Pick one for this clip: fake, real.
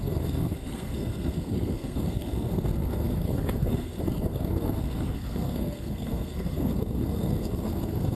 fake